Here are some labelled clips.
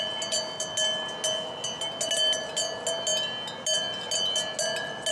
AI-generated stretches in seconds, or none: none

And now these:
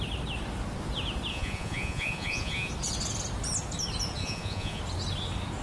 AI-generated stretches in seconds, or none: 1.3-2.7; 4.2-4.8